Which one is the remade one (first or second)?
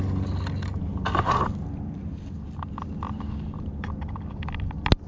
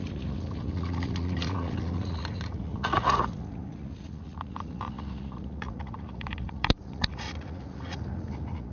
second